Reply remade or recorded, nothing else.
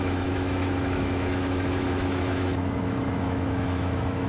remade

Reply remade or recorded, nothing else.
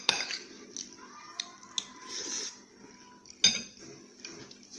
recorded